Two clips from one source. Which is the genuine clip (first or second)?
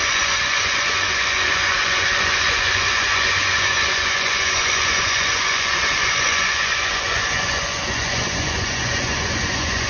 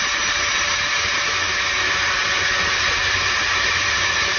second